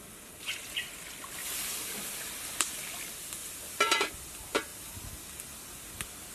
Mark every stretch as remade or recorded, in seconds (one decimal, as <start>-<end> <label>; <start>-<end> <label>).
0.0-1.4 recorded; 1.4-2.1 remade; 2.1-3.4 recorded; 3.4-4.1 remade; 4.1-6.3 recorded